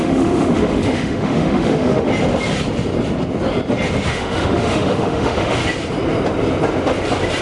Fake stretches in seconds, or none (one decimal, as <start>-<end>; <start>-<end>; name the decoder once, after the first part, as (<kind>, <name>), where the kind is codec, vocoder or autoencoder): 0.0-2.1 (autoencoder, DAC-VAE); 4.1-5.6